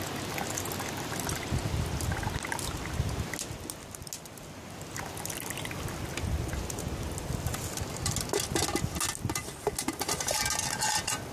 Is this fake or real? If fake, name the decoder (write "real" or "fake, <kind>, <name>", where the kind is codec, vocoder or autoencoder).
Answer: real